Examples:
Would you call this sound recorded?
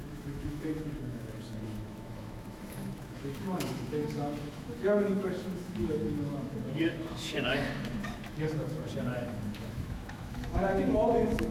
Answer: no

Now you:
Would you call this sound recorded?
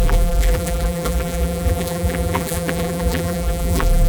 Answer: no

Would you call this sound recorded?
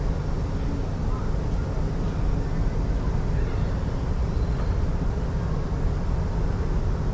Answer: yes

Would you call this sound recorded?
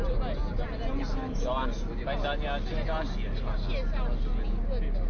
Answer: yes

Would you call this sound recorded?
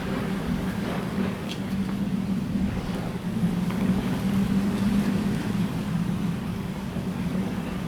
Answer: no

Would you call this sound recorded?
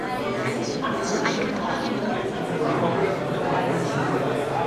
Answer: yes